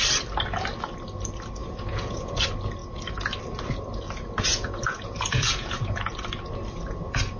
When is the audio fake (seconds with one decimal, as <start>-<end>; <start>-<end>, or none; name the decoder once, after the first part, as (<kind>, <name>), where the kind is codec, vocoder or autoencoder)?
1.6-2.4 (vocoder, Vocos); 4.5-6.1